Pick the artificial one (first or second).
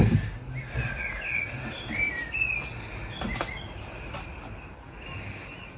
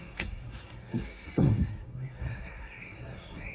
second